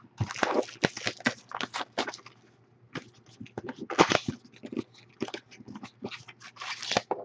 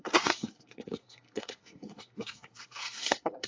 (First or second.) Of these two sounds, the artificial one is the second